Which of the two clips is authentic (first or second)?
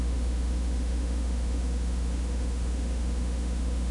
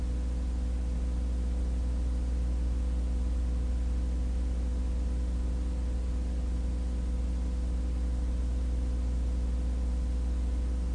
second